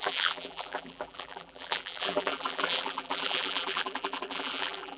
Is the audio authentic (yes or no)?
no